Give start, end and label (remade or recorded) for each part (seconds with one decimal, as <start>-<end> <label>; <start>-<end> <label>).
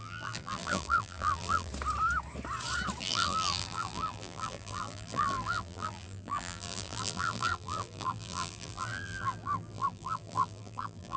0.0-1.7 remade; 1.7-3.0 recorded; 3.0-11.2 remade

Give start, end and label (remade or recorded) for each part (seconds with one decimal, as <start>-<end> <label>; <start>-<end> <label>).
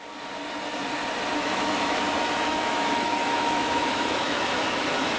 0.0-1.4 recorded; 1.4-4.5 remade; 4.5-5.2 recorded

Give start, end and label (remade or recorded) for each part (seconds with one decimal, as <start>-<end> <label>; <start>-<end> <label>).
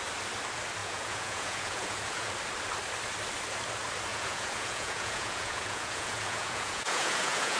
0.0-0.8 recorded; 0.8-2.3 remade; 2.3-4.1 recorded; 4.1-7.6 remade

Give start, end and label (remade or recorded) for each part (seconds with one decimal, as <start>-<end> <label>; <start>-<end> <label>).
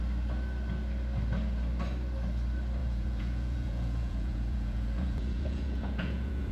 0.0-2.8 recorded; 2.8-6.5 remade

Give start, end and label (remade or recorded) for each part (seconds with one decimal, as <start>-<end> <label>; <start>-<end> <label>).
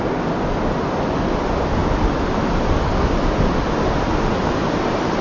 0.0-5.2 recorded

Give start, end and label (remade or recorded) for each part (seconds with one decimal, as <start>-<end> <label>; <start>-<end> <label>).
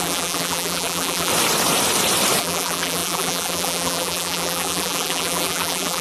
0.0-1.3 remade; 1.3-2.4 recorded; 2.4-6.0 remade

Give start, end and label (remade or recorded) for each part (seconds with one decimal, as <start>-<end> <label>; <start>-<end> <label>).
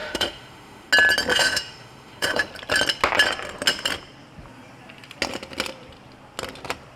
0.0-0.9 remade; 0.9-1.3 recorded; 1.3-2.5 remade; 2.5-7.0 recorded